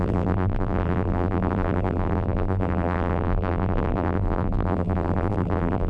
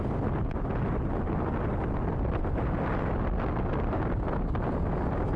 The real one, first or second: second